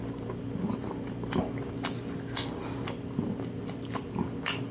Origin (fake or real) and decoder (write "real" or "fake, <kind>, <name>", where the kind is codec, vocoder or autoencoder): real